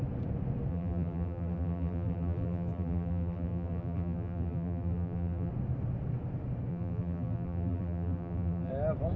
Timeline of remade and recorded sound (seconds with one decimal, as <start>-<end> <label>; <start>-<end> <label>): 0.0-0.7 recorded; 0.7-5.5 remade; 5.5-6.7 recorded; 6.7-8.7 remade; 8.7-9.2 recorded